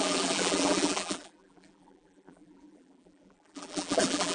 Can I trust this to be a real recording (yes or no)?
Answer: no